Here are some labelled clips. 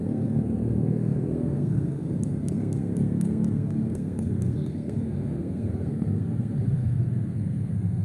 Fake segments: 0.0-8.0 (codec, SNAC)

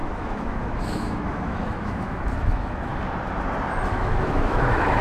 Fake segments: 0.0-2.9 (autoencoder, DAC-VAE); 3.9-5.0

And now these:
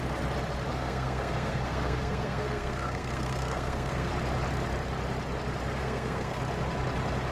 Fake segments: 0.7-4.1 (codec, SNAC); 5.8-6.4

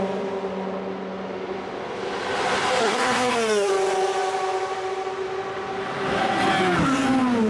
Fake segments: 2.8-3.7 (codec, SNAC)

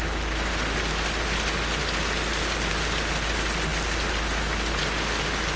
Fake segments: none